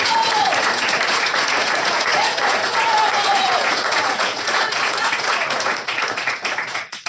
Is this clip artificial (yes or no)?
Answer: yes